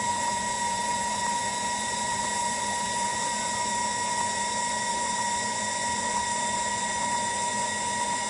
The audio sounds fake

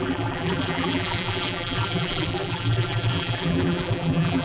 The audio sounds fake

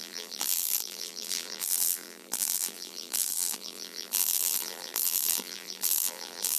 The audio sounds fake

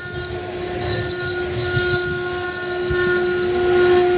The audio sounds real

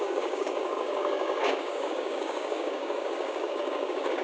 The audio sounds fake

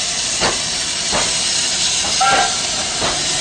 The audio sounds real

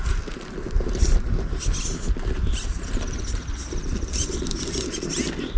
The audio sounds real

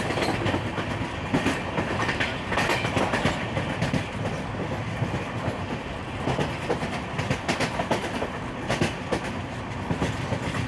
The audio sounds real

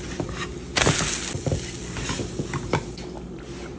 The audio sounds real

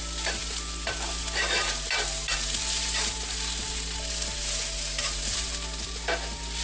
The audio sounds real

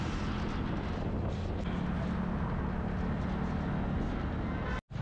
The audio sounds real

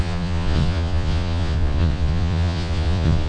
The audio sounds fake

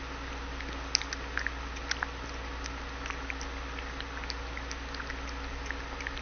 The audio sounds real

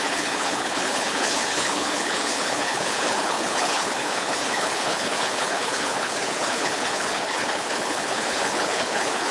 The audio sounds fake